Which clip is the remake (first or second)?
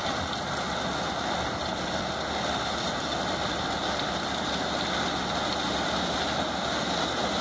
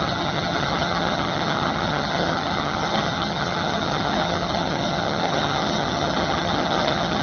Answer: second